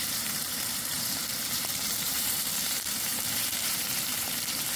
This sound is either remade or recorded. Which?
remade